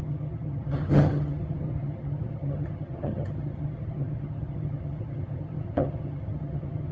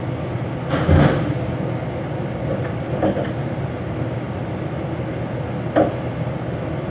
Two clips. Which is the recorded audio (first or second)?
second